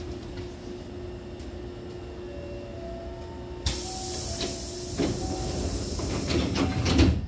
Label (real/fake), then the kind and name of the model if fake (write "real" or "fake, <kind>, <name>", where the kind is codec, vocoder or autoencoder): real